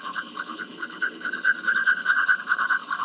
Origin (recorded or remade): remade